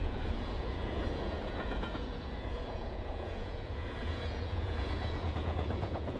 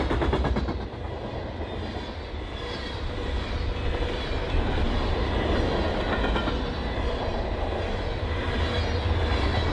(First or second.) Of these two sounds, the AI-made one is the first